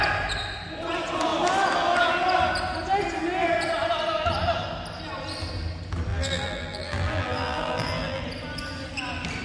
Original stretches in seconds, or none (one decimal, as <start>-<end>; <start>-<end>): 0.0-6.1; 8.2-9.4